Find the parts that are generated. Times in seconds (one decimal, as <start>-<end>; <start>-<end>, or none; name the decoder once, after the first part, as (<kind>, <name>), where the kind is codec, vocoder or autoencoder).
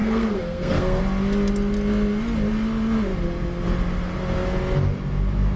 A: 0.0-1.0 (codec, SNAC)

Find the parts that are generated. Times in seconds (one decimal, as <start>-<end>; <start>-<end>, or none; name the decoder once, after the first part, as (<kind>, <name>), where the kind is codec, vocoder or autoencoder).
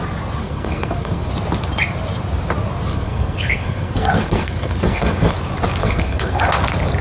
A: 0.4-1.3 (codec, SNAC); 2.9-5.3; 5.8-6.4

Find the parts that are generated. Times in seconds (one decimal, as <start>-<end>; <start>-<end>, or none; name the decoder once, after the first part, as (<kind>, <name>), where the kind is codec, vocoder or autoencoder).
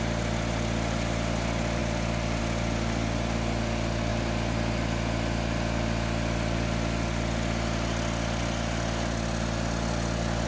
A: none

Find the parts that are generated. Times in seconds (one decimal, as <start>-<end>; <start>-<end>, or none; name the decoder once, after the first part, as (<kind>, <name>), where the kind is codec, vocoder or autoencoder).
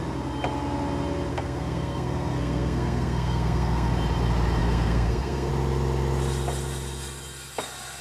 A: 1.3-3.9 (codec, SNAC); 4.6-5.5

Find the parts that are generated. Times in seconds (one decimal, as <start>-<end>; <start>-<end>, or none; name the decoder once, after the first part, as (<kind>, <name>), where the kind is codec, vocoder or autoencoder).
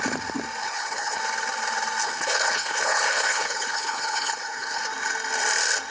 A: 0.6-1.2 (codec, HILCodec); 2.0-4.8